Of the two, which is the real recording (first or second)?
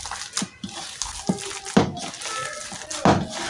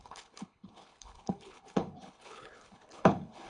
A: first